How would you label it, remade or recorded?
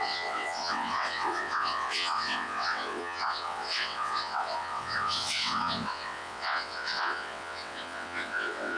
remade